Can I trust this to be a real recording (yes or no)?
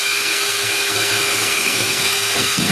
no